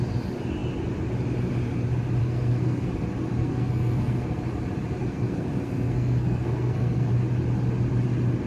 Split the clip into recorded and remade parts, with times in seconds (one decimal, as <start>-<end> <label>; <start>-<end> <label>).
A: 0.0-2.2 recorded; 2.2-2.9 remade; 2.9-3.4 recorded; 3.4-4.4 remade; 4.4-5.0 recorded; 5.0-7.1 remade; 7.1-8.5 recorded